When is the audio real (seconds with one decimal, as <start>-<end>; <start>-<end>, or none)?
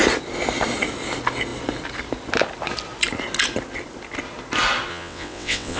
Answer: 0.0-4.9